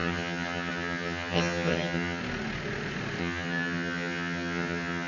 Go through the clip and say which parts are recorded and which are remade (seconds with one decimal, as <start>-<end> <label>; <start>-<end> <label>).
0.0-2.2 remade; 2.2-3.2 recorded; 3.2-5.1 remade